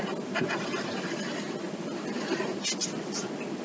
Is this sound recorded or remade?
recorded